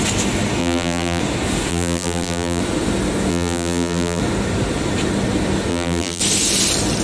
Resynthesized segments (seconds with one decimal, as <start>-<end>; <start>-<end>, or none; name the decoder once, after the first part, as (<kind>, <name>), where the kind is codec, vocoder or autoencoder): 0.6-1.2 (vocoder, BigVGAN v2); 1.7-2.6; 3.3-4.2; 5.7-6.2